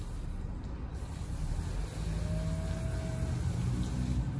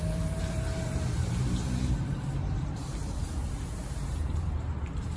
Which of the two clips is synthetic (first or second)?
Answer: second